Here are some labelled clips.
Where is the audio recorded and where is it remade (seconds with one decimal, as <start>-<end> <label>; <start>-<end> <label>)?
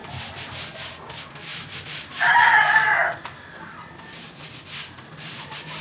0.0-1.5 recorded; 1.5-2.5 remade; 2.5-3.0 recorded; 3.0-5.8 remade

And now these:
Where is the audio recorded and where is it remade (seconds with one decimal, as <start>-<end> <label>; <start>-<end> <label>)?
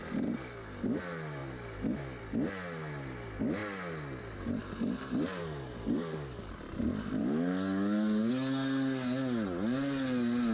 0.0-5.4 recorded; 5.4-6.5 remade; 6.5-7.2 recorded; 7.2-8.3 remade; 8.3-10.5 recorded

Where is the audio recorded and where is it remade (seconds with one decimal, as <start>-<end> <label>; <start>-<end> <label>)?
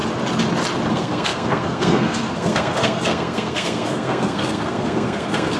0.0-0.9 recorded; 0.9-5.6 remade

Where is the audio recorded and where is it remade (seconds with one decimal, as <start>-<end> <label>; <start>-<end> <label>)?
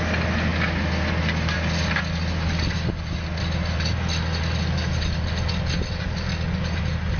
0.0-7.2 recorded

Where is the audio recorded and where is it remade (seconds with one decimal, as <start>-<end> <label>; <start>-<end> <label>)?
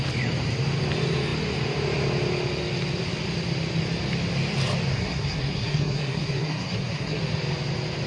0.0-4.9 recorded; 4.9-7.2 remade; 7.2-8.1 recorded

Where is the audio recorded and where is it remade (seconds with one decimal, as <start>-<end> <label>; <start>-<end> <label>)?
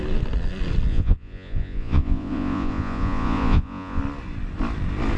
0.0-0.9 recorded; 0.9-4.0 remade; 4.0-5.2 recorded